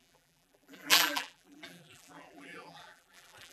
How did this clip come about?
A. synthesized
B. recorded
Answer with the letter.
A